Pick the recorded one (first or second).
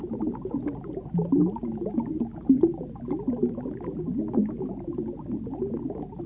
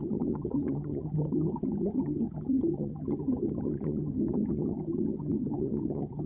first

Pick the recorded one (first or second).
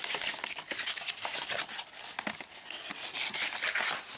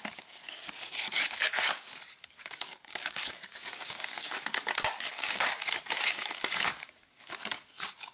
first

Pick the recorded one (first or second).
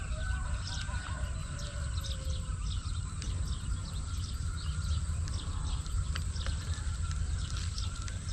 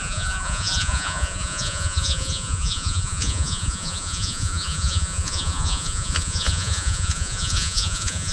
first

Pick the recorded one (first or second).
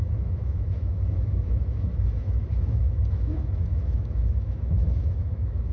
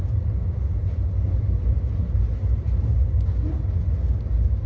second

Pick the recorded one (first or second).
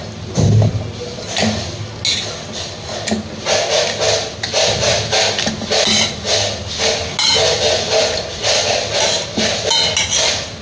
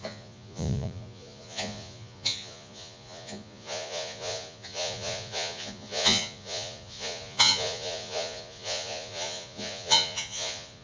first